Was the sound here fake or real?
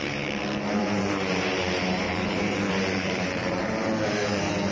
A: fake